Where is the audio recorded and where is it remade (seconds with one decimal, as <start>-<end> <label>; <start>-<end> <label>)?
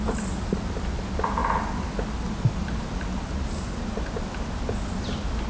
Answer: 0.0-5.5 recorded